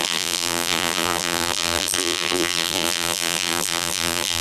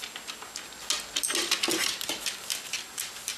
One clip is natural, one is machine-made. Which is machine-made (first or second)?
first